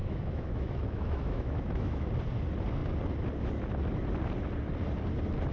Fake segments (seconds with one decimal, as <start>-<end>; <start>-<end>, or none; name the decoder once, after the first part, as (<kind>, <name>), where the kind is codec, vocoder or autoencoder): 0.0-2.1 (autoencoder, DAC-VAE)